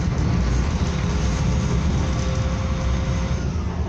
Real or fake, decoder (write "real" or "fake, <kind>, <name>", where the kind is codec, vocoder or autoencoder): real